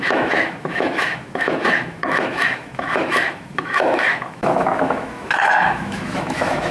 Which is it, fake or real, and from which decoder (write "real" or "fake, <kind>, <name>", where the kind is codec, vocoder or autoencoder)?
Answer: fake, autoencoder, DAC-VAE